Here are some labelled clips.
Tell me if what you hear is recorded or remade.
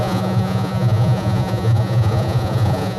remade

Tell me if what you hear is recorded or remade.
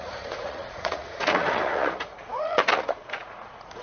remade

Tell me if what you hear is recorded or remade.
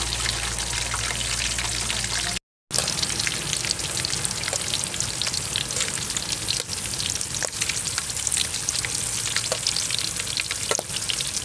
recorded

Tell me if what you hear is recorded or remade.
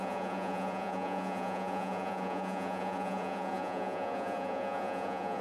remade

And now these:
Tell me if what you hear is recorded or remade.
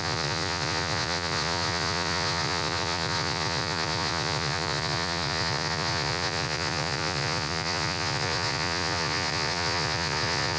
remade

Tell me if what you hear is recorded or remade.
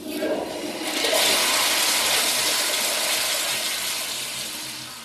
recorded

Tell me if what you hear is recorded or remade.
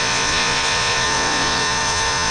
remade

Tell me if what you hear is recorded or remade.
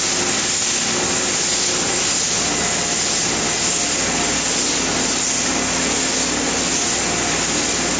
recorded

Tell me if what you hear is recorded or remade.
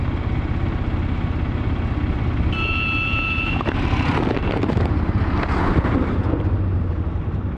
recorded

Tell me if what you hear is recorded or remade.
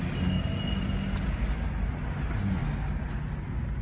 recorded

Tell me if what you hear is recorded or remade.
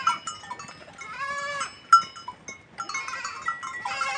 recorded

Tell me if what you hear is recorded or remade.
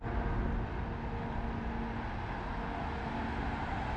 recorded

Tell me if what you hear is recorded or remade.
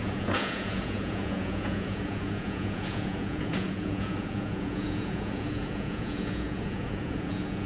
remade